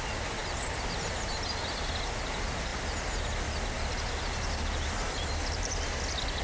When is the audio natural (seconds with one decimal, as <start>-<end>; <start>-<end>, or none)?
0.0-6.4